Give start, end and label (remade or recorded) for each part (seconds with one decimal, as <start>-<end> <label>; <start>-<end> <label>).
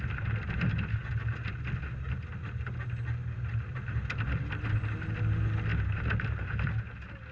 0.0-7.3 recorded